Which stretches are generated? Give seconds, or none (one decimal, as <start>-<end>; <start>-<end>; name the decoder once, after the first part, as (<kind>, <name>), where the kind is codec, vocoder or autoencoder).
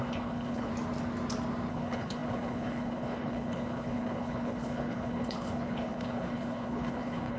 0.0-0.7 (codec, HILCodec); 1.7-7.4